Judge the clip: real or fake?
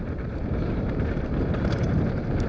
fake